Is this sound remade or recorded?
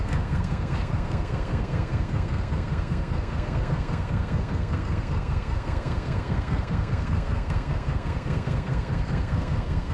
remade